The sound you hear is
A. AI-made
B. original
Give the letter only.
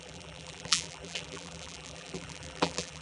A